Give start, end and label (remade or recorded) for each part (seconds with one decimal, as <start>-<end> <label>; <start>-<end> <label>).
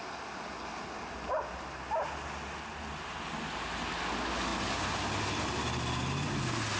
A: 0.0-6.8 recorded